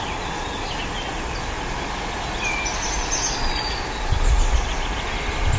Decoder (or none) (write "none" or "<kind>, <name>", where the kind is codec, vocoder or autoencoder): none